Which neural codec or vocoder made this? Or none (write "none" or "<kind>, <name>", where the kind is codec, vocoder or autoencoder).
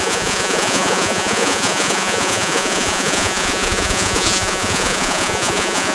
vocoder, Vocos